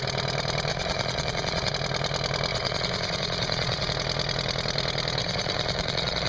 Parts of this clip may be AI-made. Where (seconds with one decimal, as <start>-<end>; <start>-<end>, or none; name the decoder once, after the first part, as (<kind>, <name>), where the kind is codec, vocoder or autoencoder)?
0.7-1.7 (vocoder, Vocos); 2.5-3.9; 5.2-6.3